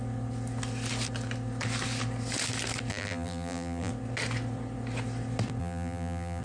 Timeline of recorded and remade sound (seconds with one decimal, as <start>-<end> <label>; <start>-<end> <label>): 0.0-2.9 recorded; 2.9-3.9 remade; 3.9-5.6 recorded; 5.6-6.4 remade